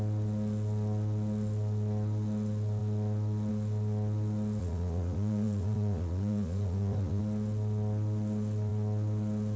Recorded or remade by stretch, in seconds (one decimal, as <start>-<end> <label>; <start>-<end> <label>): 0.0-4.6 recorded; 4.6-7.2 remade; 7.2-9.6 recorded